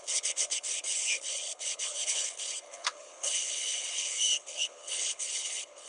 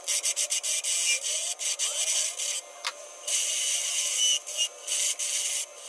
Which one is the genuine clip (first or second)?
second